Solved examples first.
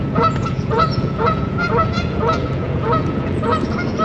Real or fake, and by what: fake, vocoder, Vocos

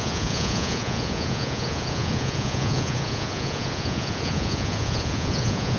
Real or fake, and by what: fake, vocoder, Vocos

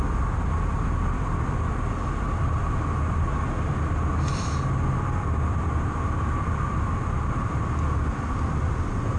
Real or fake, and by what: real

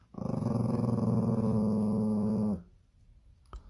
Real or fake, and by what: real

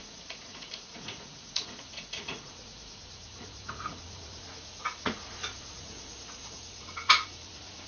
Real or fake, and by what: fake, vocoder, Vocos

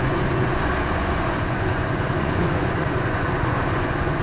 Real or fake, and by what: fake, vocoder, Vocos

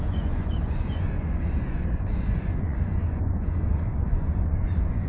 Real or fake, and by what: fake, vocoder, Vocos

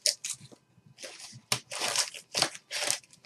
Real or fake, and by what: real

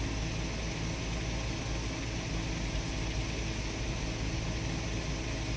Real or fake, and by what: real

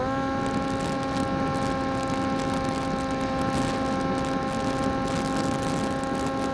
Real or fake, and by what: real